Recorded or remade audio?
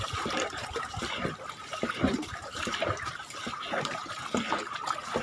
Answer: remade